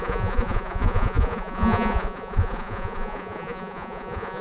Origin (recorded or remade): remade